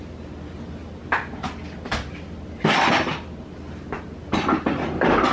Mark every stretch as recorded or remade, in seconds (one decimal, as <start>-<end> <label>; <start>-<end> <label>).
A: 0.0-5.3 recorded